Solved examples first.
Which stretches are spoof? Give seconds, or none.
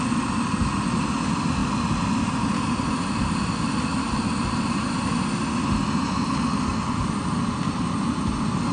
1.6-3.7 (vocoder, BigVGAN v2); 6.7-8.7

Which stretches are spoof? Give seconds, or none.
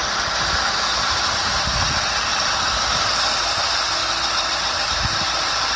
0.0-2.3 (vocoder, BigVGAN v2); 3.4-4.0; 4.9-5.8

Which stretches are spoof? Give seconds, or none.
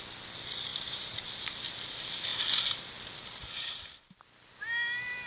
0.7-1.7 (vocoder, BigVGAN v2); 3.4-3.9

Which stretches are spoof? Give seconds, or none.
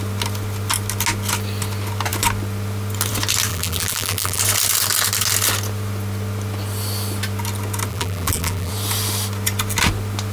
3.5-4.4 (vocoder, BigVGAN v2); 7.9-8.7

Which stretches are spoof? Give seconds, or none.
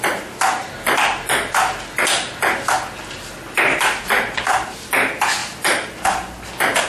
none